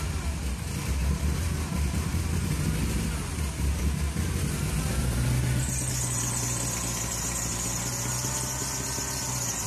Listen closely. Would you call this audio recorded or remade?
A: recorded